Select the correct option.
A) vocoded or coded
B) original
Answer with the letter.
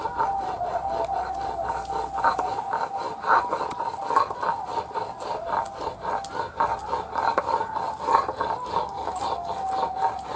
B